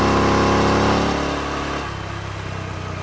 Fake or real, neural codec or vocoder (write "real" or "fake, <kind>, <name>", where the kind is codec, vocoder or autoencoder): real